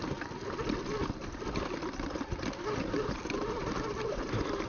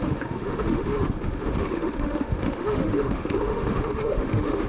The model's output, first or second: second